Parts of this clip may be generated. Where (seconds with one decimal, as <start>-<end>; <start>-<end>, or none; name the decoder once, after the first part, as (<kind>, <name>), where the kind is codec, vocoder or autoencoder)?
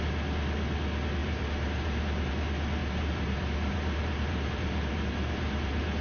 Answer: 1.2-2.3 (vocoder, BigVGAN v2); 2.8-6.0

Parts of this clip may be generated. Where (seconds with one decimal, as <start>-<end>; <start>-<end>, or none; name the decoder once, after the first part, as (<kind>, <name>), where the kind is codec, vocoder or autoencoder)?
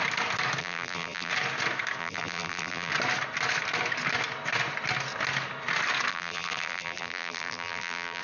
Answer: 0.6-1.3 (vocoder, BigVGAN v2); 2.0-2.9; 6.1-8.2